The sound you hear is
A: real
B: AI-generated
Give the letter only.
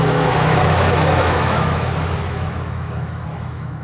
B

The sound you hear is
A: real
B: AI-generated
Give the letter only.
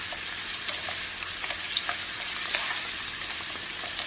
A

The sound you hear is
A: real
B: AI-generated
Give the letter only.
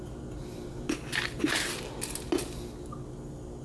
A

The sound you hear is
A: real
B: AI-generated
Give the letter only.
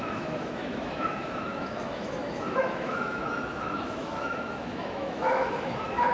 B